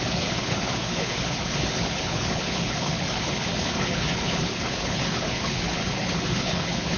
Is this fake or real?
fake